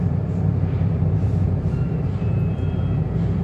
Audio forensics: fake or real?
fake